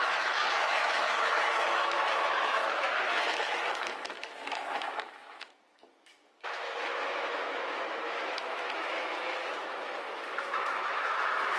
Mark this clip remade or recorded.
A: remade